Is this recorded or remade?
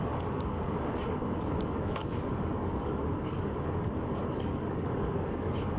remade